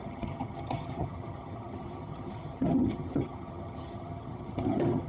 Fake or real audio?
fake